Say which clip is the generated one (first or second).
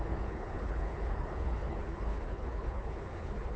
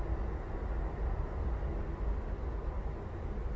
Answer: first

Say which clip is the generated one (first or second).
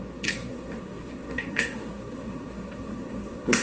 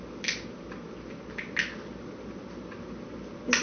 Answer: first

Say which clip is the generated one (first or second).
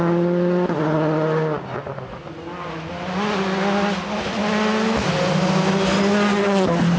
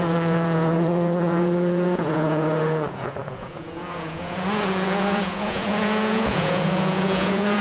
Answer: second